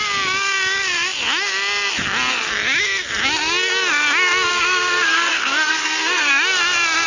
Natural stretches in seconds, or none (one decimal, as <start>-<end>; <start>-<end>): 0.0-4.5; 6.3-7.1